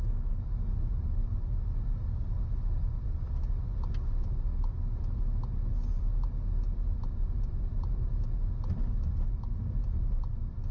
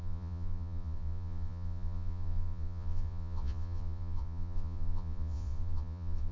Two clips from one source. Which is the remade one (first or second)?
second